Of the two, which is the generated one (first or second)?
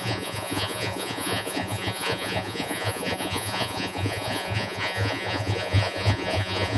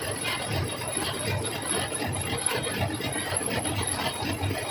first